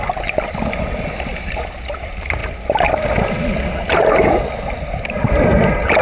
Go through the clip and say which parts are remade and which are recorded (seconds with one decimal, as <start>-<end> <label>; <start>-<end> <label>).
0.0-6.0 recorded